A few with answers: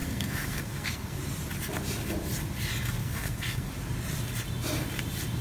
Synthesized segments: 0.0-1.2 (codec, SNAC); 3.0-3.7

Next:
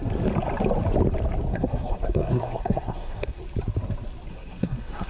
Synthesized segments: 1.5-3.4 (codec, SNAC); 4.3-5.1